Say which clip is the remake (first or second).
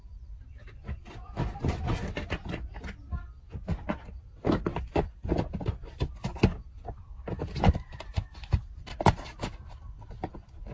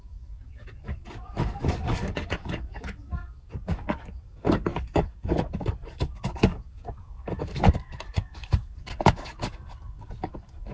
second